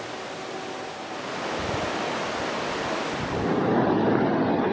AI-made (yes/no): no